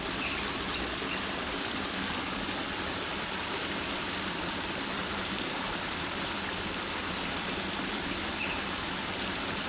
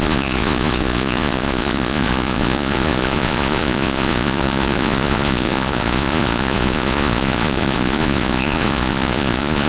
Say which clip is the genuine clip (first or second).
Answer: first